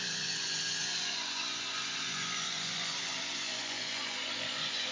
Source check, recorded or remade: remade